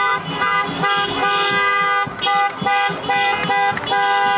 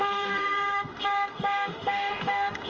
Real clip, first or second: first